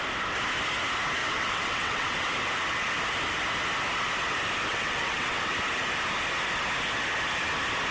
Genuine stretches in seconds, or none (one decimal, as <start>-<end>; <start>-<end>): 0.0-1.2; 2.3-4.7; 5.5-7.9